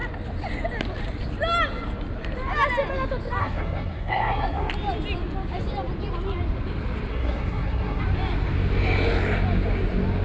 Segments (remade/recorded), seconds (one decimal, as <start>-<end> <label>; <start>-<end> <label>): 0.0-3.4 recorded; 3.4-4.7 remade; 4.7-7.1 recorded; 7.1-8.0 remade; 8.0-10.2 recorded